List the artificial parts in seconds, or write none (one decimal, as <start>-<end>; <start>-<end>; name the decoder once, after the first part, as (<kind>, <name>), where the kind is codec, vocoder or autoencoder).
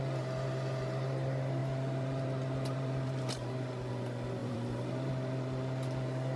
1.6-3.3 (vocoder, BigVGAN v2); 4.4-5.1